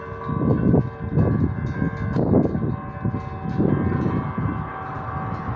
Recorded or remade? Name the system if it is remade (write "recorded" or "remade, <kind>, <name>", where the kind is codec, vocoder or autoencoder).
recorded